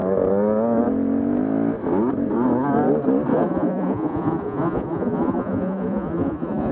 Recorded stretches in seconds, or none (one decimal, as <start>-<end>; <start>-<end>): 0.0-3.3